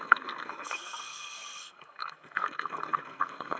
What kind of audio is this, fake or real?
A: fake